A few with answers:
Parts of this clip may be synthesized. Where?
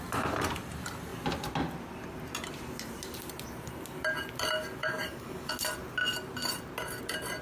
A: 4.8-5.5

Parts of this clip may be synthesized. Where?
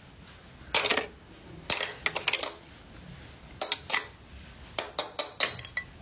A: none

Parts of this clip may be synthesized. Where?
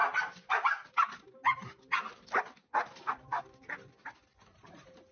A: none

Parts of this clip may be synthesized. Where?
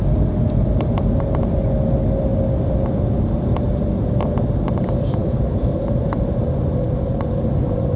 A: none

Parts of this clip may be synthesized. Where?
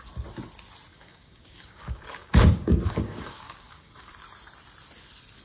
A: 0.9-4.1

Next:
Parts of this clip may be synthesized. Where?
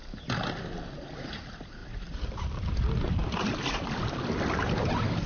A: none